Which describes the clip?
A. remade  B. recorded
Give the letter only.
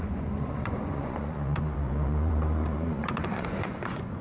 A